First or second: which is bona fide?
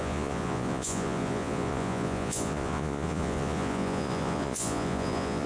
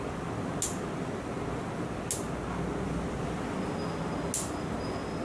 second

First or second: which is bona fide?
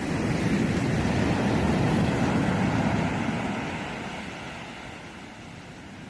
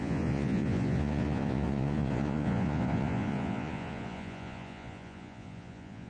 first